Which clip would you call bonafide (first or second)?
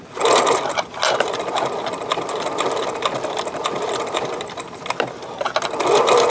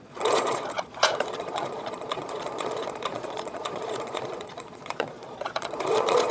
first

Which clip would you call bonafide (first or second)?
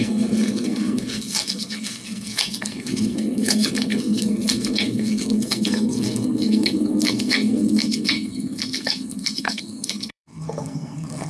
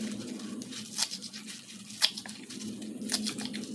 second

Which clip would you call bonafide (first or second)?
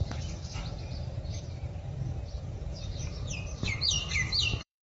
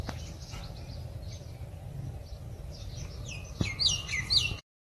second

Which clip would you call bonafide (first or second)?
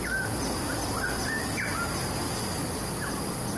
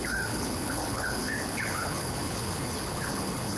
first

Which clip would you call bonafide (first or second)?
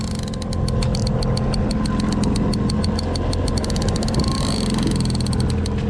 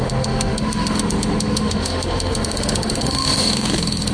first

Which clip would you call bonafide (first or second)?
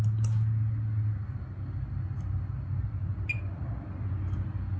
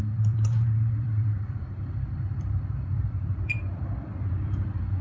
first